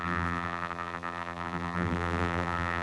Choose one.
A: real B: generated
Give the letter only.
B